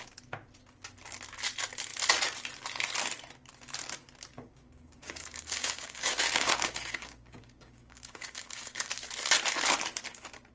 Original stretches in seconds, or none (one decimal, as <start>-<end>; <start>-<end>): 0.0-4.3; 8.9-10.5